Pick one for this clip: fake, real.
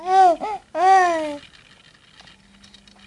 real